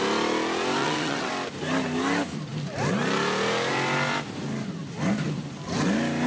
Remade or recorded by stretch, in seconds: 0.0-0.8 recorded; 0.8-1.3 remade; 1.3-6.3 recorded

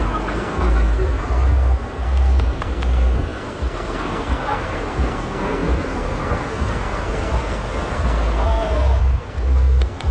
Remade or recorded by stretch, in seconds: 0.0-10.1 remade

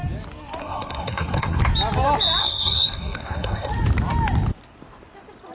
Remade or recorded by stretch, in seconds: 0.0-0.6 recorded; 0.6-1.6 remade; 1.6-2.4 recorded; 2.4-3.7 remade; 3.7-5.5 recorded

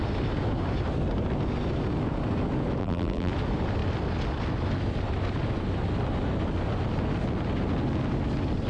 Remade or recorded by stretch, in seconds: 0.0-2.8 recorded; 2.8-3.3 remade; 3.3-8.7 recorded

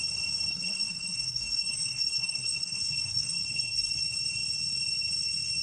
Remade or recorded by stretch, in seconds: 0.0-0.5 recorded; 0.5-3.9 remade; 3.9-5.6 recorded

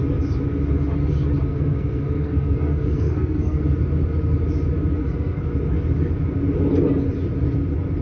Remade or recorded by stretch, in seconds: 0.0-1.5 recorded; 1.5-3.6 remade; 3.6-5.0 recorded; 5.0-5.5 remade; 5.5-8.0 recorded

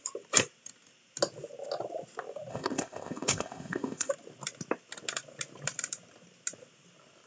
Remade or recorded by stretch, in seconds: 0.0-2.5 recorded; 2.5-4.1 remade; 4.1-7.3 recorded

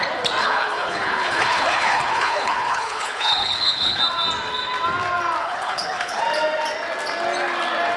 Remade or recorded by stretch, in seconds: 0.0-0.4 recorded; 0.4-4.0 remade; 4.0-5.4 recorded; 5.4-6.2 remade; 6.2-8.0 recorded